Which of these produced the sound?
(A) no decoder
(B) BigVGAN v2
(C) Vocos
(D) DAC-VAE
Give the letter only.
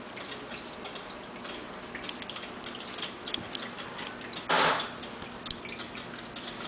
A